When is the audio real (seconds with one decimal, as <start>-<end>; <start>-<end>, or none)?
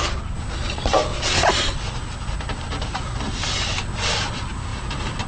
0.0-5.3